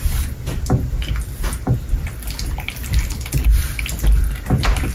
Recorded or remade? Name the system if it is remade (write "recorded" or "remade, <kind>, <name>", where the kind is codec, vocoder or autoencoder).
recorded